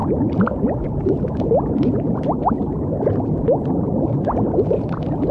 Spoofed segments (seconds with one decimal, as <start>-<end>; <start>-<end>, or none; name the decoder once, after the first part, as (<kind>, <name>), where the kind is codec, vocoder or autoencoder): none